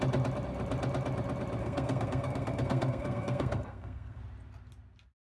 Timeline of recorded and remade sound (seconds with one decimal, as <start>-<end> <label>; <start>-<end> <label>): 0.0-1.6 recorded; 1.6-4.2 remade; 4.2-5.2 recorded